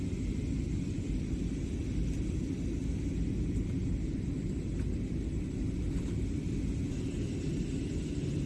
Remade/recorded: recorded